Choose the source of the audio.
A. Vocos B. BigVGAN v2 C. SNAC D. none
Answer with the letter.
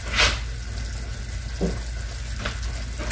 D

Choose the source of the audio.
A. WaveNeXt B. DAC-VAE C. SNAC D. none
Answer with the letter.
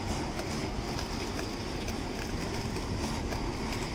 D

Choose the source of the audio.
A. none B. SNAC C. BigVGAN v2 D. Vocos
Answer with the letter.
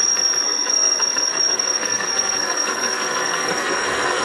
B